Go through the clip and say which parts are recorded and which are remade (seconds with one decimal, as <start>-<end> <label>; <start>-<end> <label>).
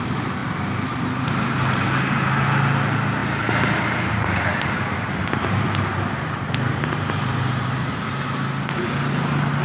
0.0-9.6 recorded